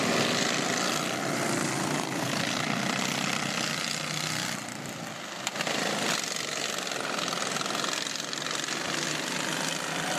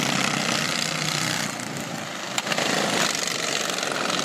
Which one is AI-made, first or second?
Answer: second